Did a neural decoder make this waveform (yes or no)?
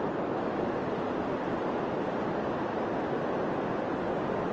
no